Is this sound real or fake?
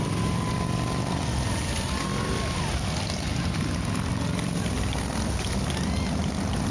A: real